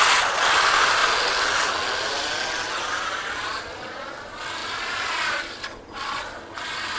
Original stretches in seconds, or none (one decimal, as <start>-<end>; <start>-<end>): 0.0-7.0